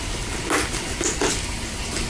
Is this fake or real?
real